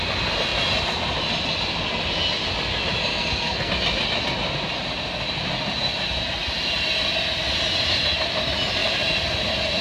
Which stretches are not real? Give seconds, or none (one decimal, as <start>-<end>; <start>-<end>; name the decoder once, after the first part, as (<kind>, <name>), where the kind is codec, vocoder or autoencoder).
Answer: 3.0-3.7 (codec, SNAC)